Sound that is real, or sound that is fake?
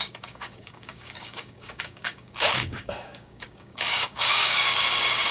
fake